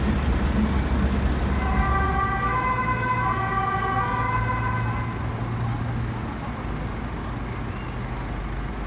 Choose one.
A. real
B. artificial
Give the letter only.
A